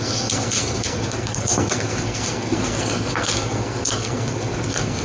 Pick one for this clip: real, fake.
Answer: fake